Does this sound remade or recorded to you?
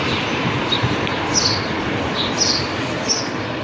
recorded